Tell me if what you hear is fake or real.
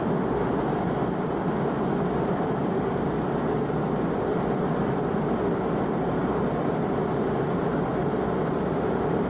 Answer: real